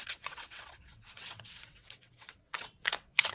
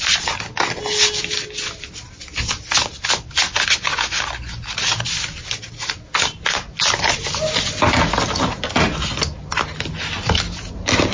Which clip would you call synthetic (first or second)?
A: first